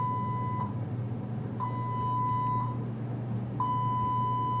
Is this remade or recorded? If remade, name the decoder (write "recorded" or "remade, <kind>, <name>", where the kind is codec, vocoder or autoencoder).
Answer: recorded